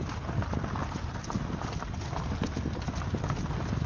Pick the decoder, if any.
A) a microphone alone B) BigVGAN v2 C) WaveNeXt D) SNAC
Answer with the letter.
A